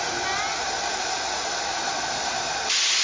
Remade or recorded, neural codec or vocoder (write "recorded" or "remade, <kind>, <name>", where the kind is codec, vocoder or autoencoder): recorded